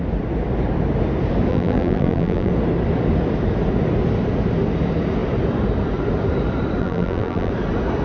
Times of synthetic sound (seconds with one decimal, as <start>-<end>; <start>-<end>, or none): 1.5-2.5; 6.8-7.5